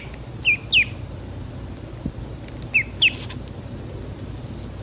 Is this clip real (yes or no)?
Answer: yes